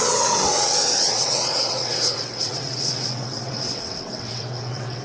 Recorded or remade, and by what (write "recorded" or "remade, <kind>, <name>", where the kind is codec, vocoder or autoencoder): remade, vocoder, WaveNeXt